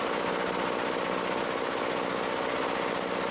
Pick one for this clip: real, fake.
real